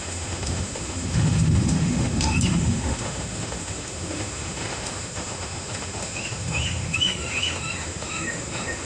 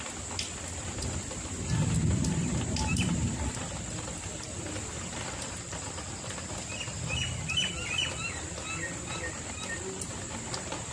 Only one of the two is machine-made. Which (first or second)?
first